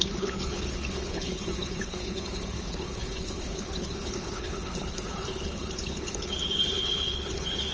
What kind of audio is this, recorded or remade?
remade